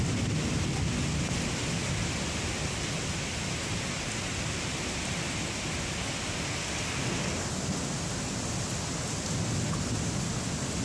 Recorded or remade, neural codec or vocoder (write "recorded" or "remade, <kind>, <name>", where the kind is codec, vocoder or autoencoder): recorded